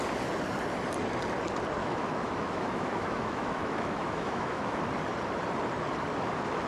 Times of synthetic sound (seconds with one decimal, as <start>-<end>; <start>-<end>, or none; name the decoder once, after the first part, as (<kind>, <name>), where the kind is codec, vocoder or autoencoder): 1.8-4.8 (autoencoder, DAC-VAE)